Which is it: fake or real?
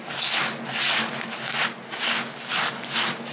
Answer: real